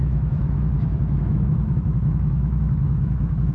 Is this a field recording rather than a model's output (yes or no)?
no